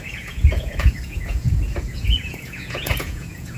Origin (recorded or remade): remade